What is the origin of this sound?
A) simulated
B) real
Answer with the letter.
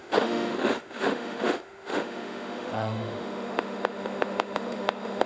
A